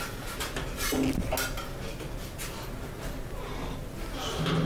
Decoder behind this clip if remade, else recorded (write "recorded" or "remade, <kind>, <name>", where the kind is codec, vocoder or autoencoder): recorded